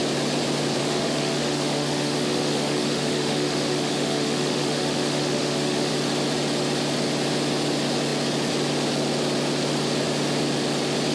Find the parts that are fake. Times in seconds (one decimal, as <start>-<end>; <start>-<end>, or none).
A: 0.8-5.9